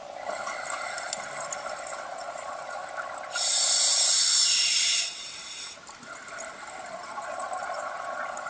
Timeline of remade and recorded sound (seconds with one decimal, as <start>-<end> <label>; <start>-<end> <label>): 0.0-2.0 recorded; 2.0-2.8 remade; 2.8-6.8 recorded; 6.8-8.5 remade